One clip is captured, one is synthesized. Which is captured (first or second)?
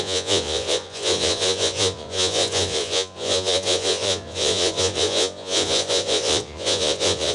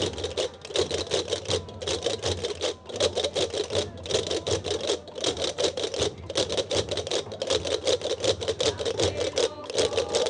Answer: second